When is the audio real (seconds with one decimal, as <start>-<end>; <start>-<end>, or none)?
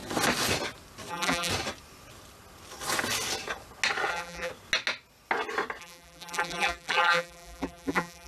0.0-1.1; 1.5-4.1; 4.5-5.8